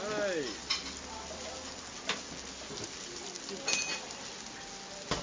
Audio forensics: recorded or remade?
recorded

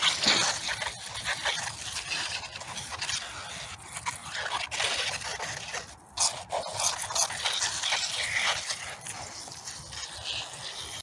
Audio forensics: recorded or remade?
recorded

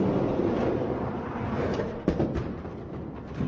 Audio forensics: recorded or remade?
recorded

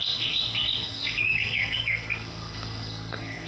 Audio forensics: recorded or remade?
remade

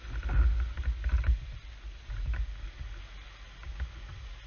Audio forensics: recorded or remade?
recorded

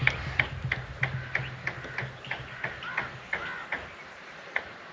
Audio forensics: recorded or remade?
recorded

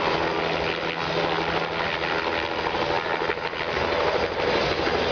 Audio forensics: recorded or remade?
recorded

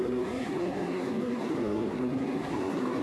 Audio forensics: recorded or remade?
remade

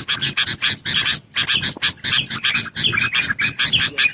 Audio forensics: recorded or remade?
recorded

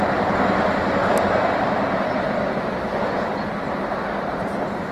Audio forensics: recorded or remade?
recorded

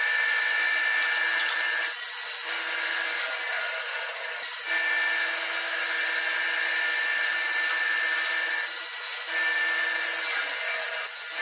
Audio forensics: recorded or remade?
recorded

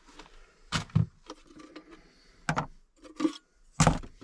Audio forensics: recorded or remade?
recorded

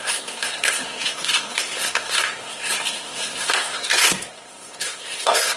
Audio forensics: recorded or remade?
remade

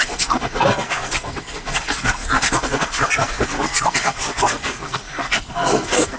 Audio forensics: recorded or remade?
remade